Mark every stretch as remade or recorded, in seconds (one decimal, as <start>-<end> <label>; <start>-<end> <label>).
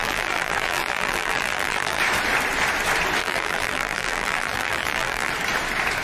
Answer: 0.0-2.0 remade; 2.0-3.2 recorded; 3.2-5.3 remade; 5.3-6.0 recorded